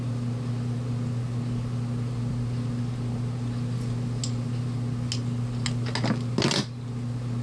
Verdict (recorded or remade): recorded